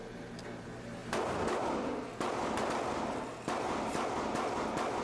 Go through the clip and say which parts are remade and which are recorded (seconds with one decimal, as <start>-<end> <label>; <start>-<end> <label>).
0.0-5.0 recorded